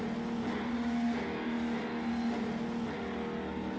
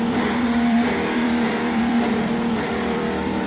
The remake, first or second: second